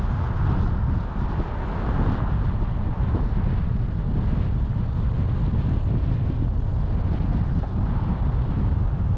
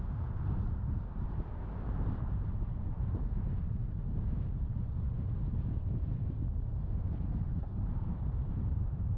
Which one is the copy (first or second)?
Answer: second